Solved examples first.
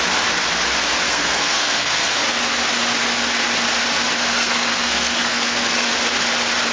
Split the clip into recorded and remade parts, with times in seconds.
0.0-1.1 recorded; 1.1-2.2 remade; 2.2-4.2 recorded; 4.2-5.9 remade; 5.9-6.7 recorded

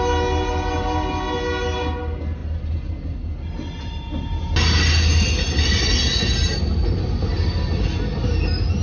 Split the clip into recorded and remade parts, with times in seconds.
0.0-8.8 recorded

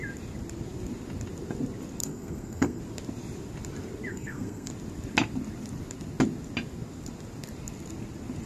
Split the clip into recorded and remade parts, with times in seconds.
0.0-2.0 recorded; 2.0-2.8 remade; 2.8-4.1 recorded; 4.1-4.7 remade; 4.7-8.5 recorded